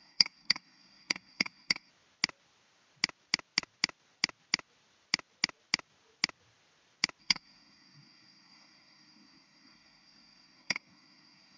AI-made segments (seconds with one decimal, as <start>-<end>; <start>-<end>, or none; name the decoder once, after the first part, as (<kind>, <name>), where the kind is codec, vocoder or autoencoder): 0.0-1.9 (codec, SNAC); 7.2-11.6